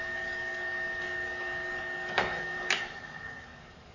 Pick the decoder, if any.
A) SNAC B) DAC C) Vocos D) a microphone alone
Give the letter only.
B